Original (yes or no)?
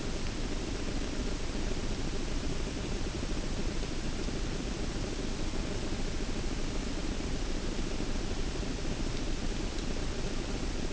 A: yes